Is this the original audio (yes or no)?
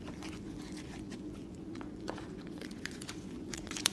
no